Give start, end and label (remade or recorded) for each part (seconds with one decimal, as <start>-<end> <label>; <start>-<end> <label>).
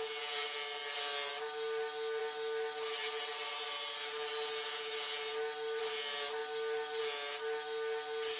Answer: 0.0-8.4 recorded